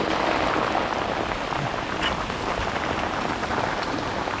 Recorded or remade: recorded